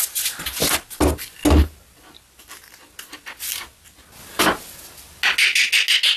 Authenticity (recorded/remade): recorded